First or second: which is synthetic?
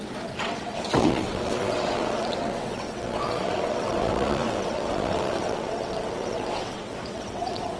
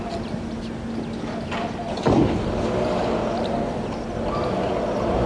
first